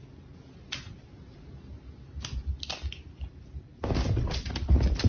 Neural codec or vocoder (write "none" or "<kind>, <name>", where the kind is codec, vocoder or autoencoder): none